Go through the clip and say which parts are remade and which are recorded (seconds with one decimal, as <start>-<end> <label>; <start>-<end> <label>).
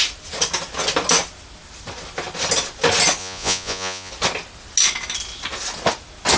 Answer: 0.0-3.2 recorded; 3.2-4.1 remade; 4.1-6.4 recorded